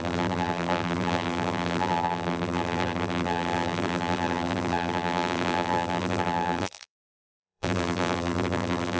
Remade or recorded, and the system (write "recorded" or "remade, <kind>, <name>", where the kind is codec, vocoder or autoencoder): remade, vocoder, BigVGAN v2